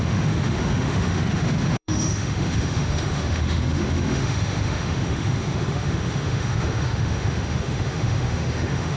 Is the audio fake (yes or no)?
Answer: yes